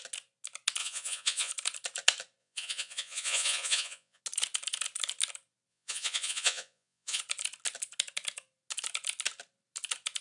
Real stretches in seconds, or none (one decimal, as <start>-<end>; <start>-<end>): 0.0-0.8; 1.5-2.4; 4.2-5.7; 7.2-10.2